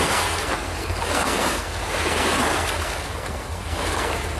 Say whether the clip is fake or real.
fake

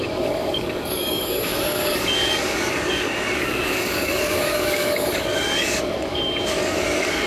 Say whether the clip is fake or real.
fake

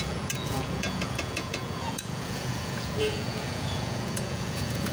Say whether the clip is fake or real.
fake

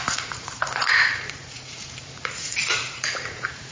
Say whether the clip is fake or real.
fake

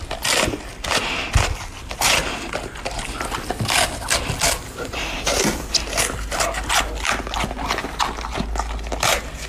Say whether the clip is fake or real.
real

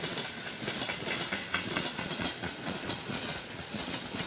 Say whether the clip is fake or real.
fake